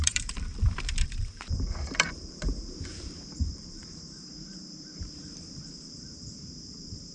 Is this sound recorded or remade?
remade